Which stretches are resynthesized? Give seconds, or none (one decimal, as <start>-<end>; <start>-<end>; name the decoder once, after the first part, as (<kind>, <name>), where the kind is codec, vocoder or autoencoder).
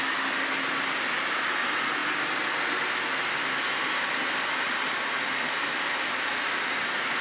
none